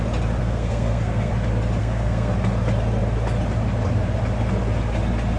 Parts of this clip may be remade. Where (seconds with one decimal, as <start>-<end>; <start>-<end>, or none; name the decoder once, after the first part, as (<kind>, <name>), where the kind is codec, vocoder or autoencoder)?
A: 0.4-1.3 (codec, SNAC); 1.8-2.3